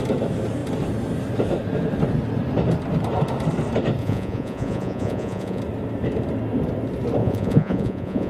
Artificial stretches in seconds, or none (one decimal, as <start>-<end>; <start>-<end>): 4.0-5.6; 7.2-8.3